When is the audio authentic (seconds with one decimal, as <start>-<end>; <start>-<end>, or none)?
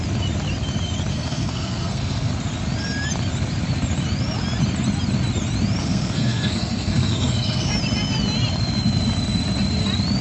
0.0-1.1; 2.3-5.8; 7.7-10.2